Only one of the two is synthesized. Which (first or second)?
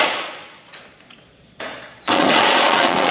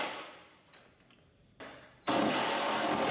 first